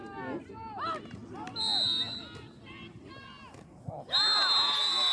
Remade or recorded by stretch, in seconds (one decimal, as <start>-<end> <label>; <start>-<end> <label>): 0.0-5.1 recorded